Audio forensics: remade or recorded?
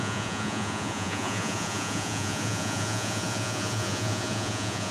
remade